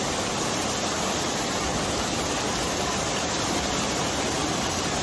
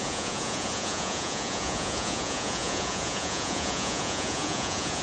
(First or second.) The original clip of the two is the first